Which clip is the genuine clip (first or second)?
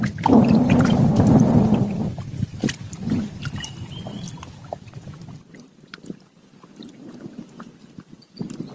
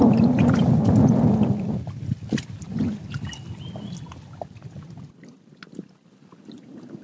second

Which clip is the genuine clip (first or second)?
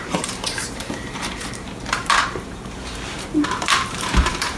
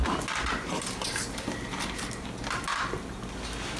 second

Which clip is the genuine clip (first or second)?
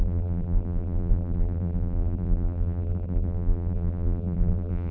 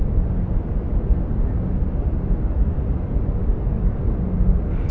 second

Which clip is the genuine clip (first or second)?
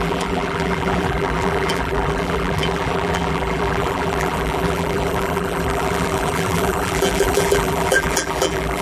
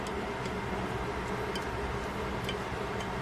second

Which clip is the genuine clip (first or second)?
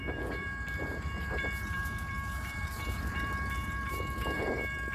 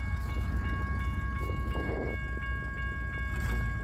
second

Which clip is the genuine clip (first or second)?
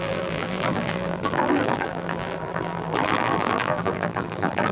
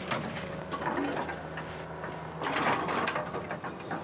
second